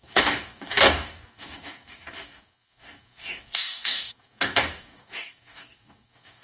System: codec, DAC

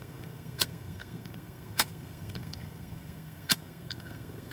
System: codec, SNAC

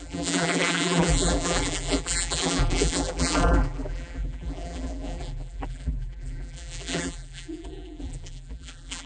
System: vocoder, BigVGAN v2